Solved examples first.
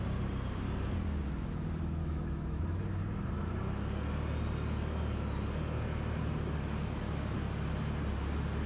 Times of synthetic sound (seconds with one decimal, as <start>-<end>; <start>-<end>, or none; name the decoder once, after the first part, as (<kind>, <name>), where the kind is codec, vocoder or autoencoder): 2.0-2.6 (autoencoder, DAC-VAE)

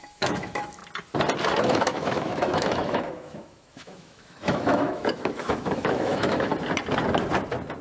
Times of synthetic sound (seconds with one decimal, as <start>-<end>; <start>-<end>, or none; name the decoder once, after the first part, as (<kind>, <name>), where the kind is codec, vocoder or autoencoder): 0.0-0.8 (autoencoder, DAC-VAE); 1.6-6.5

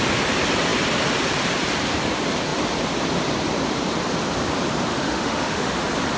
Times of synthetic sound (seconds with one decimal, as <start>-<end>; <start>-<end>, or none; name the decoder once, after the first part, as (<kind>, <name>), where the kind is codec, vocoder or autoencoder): 4.9-5.8 (autoencoder, DAC-VAE)